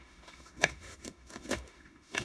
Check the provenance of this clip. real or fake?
fake